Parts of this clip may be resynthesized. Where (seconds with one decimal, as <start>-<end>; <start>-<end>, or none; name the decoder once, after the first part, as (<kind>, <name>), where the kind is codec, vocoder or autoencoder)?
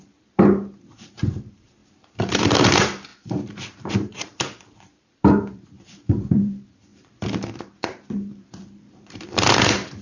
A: 0.0-10.0 (vocoder, BigVGAN v2)